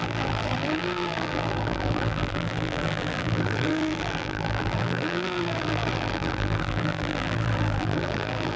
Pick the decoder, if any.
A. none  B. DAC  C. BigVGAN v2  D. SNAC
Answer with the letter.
C